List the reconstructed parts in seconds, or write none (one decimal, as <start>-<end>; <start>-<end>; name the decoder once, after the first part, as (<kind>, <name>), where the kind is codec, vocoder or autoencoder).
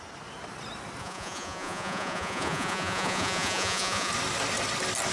1.0-4.1 (vocoder, Vocos)